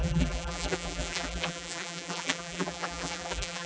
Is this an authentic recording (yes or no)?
no